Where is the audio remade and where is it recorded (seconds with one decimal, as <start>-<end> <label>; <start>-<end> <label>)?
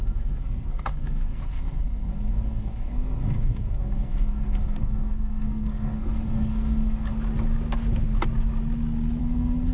0.0-7.1 remade; 7.1-9.2 recorded; 9.2-9.7 remade